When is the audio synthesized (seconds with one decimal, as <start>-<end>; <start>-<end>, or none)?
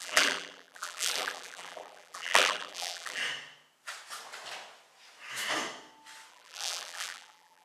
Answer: 0.0-3.2; 6.3-7.6